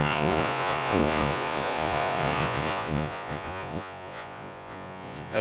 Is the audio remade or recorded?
remade